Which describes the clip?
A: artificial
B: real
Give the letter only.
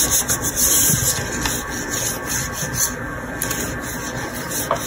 A